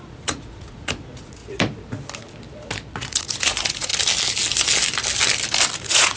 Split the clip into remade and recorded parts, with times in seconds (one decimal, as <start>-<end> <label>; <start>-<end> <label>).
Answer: 0.0-1.4 remade; 1.4-2.9 recorded; 2.9-3.9 remade; 3.9-5.8 recorded; 5.8-6.2 remade